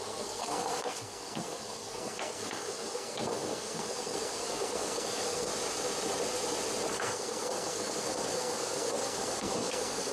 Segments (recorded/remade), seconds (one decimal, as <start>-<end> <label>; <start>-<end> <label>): 0.0-5.5 remade; 5.5-6.9 recorded; 6.9-10.1 remade

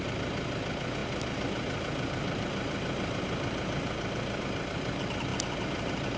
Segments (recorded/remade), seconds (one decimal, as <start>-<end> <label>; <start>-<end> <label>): 0.0-6.2 recorded

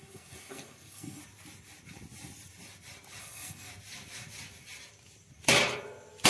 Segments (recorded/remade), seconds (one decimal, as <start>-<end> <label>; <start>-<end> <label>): 0.0-1.2 remade; 1.2-3.2 recorded; 3.2-3.7 remade; 3.7-6.3 recorded